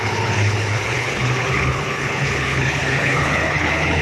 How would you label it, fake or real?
fake